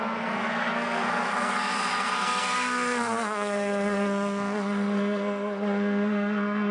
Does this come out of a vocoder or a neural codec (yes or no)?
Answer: yes